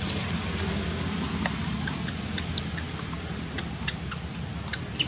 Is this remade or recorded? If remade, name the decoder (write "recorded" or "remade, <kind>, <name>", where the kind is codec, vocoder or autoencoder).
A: recorded